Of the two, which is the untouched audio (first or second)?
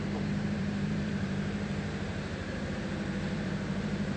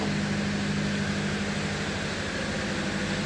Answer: second